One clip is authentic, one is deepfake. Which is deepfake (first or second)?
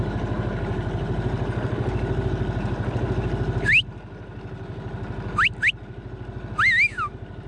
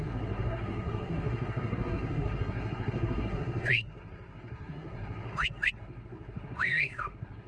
second